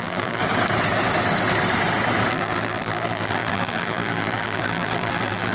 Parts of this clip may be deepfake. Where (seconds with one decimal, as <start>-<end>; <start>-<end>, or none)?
0.0-0.4; 2.3-5.5